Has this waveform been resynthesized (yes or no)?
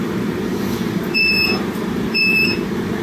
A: yes